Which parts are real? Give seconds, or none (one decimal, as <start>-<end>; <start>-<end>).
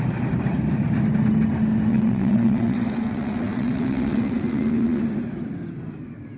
0.0-1.9; 5.0-6.4